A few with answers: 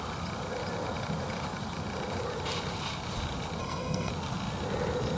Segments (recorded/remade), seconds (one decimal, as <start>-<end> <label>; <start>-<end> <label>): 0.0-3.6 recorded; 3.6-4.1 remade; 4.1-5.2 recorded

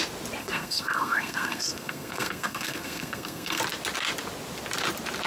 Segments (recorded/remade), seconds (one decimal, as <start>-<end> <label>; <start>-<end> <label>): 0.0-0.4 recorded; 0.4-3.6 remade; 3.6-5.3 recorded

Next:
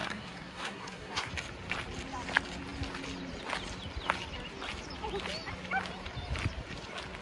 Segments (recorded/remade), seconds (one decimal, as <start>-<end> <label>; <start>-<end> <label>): 0.0-1.3 remade; 1.3-7.2 recorded

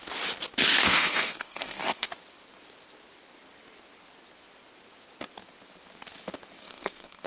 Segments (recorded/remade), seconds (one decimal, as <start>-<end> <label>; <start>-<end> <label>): 0.0-0.7 recorded; 0.7-2.1 remade; 2.1-6.6 recorded; 6.6-7.3 remade

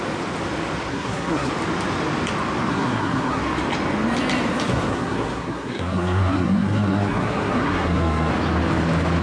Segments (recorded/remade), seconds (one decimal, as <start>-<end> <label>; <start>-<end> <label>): 0.0-0.9 recorded; 0.9-1.5 remade; 1.5-2.7 recorded; 2.7-3.4 remade; 3.4-4.9 recorded; 4.9-8.3 remade; 8.3-9.2 recorded

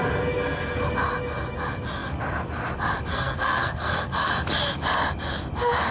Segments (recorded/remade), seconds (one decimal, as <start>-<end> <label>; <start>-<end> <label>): 0.0-3.1 recorded; 3.1-4.3 remade; 4.3-5.9 recorded